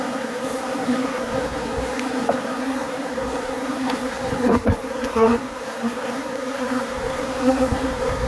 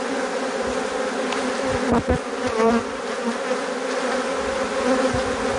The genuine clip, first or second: second